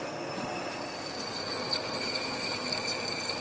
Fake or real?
real